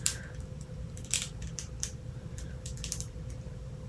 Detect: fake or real fake